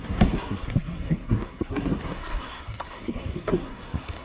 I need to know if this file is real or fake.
fake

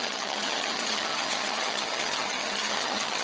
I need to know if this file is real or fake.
fake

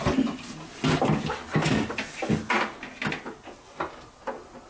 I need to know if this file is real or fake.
real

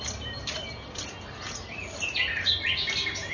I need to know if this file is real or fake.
real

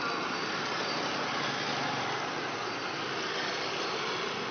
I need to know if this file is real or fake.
real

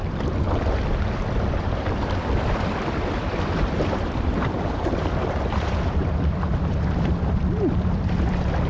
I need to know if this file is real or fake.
fake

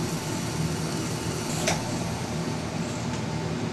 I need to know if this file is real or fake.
real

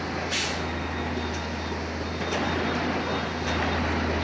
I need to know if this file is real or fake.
real